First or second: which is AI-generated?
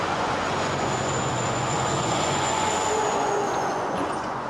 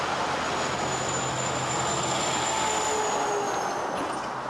first